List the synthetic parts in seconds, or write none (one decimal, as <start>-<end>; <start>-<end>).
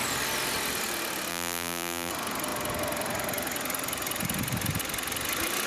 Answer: 1.3-2.1